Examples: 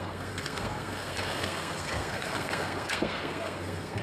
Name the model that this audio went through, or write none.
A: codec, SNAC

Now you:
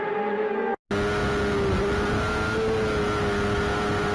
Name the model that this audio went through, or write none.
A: none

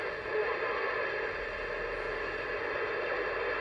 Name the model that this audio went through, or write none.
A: none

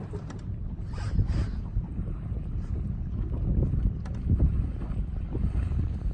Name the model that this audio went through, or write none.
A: none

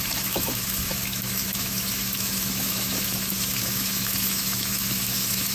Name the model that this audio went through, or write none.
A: autoencoder, DAC-VAE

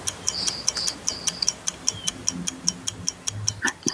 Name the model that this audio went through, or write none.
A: none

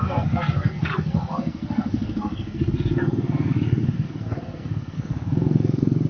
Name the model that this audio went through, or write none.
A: codec, SNAC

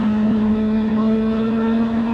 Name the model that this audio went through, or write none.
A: codec, SNAC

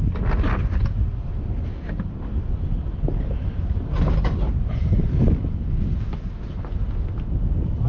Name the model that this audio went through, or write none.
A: none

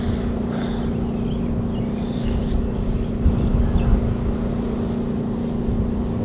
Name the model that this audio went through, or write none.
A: none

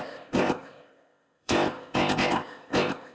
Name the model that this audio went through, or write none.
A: codec, ZipCodec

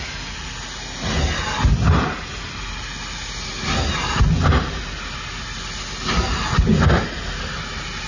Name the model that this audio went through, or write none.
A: none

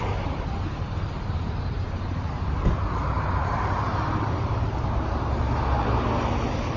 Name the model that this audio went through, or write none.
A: vocoder, BigVGAN v2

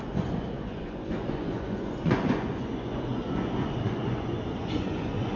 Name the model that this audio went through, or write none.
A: vocoder, Vocos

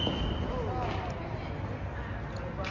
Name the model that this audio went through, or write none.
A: none